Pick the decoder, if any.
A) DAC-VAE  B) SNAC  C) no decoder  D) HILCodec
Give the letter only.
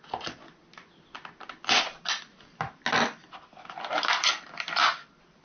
C